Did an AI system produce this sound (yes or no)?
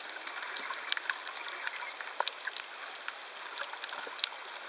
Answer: no